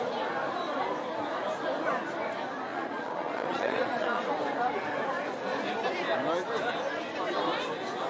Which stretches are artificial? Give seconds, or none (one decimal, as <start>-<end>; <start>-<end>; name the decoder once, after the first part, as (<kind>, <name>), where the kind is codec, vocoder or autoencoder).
2.7-4.2 (vocoder, Vocos)